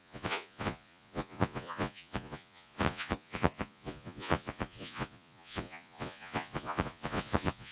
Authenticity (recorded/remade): remade